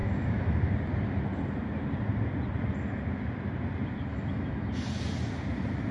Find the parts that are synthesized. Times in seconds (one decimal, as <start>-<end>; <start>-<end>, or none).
0.0-0.7; 4.1-4.7

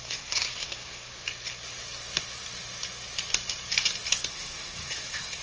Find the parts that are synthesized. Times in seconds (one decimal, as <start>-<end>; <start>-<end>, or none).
0.0-1.1; 4.3-5.4

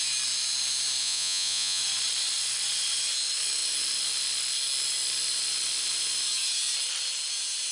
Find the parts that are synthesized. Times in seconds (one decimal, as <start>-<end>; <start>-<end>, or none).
1.0-1.8

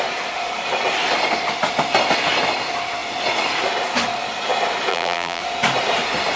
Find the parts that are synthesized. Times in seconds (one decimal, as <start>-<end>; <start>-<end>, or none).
4.9-5.4

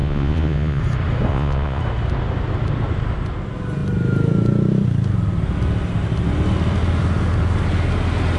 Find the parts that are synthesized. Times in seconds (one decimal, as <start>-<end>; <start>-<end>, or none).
0.0-0.8; 1.3-1.8

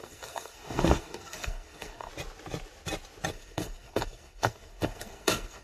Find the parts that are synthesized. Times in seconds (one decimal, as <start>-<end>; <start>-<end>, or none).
0.0-2.1; 3.3-5.6

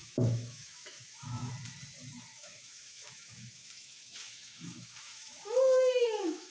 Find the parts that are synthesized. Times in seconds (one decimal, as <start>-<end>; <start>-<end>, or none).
0.0-1.5; 2.3-6.5

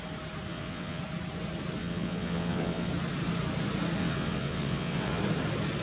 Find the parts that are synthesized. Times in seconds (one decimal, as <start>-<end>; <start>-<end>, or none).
0.5-1.0; 1.8-2.9; 4.0-5.2